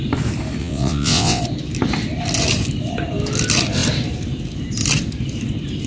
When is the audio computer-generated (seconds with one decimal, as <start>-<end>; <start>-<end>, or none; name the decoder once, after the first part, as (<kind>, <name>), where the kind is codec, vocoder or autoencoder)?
0.6-1.4 (vocoder, WaveNeXt)